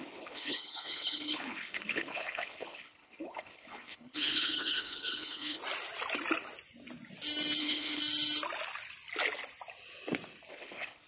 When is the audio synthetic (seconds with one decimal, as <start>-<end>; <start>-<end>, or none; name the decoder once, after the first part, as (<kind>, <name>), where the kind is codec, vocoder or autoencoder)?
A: 0.0-5.6 (codec, HILCodec); 7.6-8.0; 10.5-11.1